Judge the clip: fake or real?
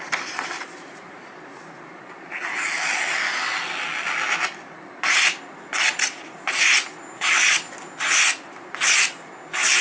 real